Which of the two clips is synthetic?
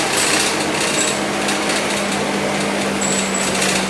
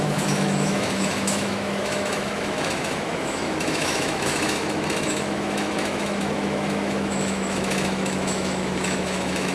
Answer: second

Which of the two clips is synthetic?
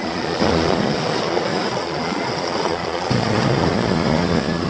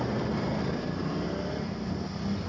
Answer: first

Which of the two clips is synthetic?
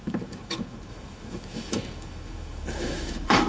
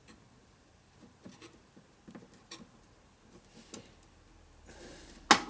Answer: first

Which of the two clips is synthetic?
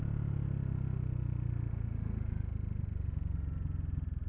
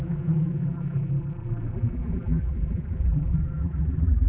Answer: second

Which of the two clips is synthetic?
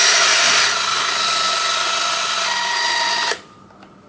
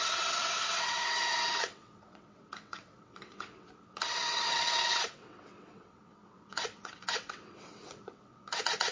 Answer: second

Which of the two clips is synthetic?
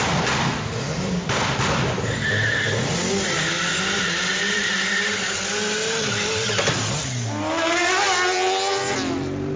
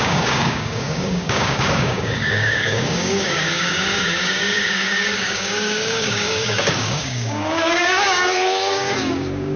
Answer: second